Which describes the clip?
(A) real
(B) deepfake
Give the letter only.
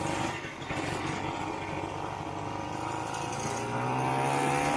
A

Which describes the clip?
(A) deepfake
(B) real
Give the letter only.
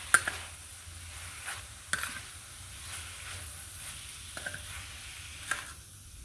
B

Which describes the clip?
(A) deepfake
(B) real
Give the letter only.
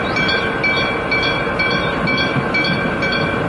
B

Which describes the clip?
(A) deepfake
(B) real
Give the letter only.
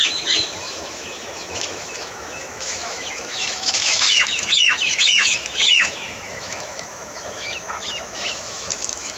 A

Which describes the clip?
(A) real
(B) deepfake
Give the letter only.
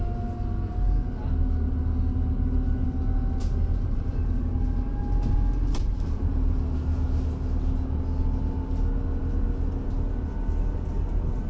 A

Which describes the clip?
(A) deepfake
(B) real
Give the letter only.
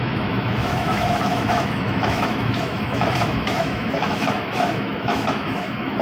A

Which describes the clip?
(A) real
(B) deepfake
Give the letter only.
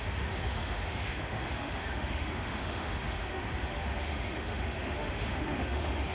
B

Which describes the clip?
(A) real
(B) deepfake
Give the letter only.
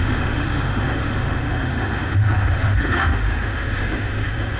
B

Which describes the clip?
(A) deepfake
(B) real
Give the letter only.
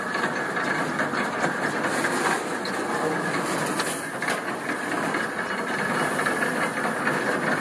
B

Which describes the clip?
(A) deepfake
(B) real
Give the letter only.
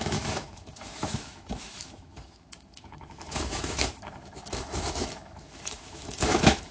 A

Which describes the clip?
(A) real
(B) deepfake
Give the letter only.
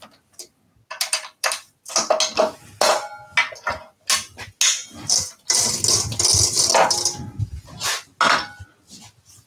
A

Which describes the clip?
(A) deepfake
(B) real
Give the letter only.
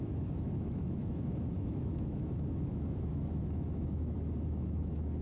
A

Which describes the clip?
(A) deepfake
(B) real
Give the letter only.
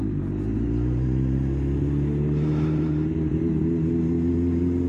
B